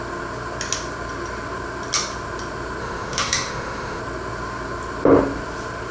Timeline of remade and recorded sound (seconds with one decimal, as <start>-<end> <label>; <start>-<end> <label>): 0.0-2.8 recorded; 2.8-4.0 remade; 4.0-5.9 recorded

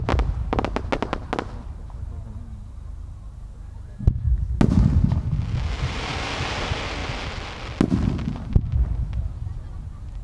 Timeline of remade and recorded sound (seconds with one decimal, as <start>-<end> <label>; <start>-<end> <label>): 0.0-10.2 recorded